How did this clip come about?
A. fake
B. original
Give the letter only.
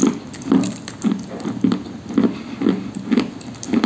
B